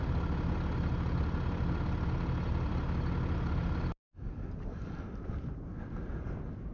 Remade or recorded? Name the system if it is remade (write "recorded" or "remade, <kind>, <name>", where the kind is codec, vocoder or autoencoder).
recorded